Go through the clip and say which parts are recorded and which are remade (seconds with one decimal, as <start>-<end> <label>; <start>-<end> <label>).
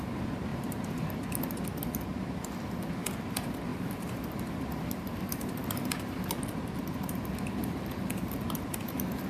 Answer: 0.0-0.5 recorded; 0.5-1.1 remade; 1.1-2.1 recorded; 2.1-2.6 remade; 2.6-3.7 recorded; 3.7-8.1 remade; 8.1-9.3 recorded